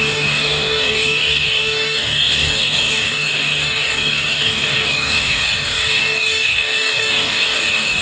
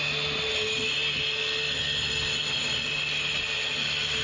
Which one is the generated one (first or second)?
first